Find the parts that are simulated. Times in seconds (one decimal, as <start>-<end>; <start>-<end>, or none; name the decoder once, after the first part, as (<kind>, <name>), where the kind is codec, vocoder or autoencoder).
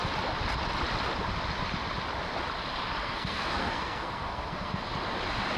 3.0-4.8 (codec, SNAC)